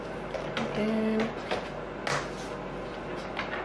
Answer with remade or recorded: recorded